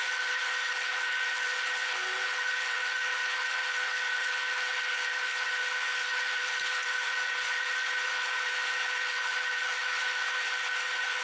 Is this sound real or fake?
fake